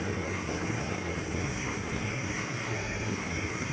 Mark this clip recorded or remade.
remade